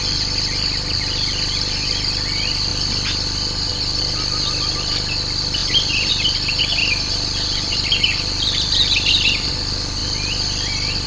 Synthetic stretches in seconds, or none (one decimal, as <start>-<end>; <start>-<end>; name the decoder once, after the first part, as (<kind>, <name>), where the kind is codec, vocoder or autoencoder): 5.6-6.1 (vocoder, BigVGAN v2); 6.8-9.5